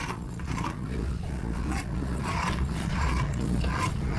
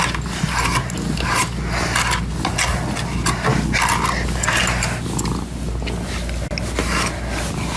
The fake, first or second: first